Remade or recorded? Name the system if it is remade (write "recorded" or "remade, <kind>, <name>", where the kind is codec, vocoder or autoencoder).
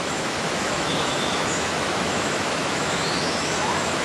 remade, autoencoder, DAC-VAE